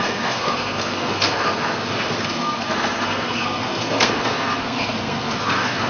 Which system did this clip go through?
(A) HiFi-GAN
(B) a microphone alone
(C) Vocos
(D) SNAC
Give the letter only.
D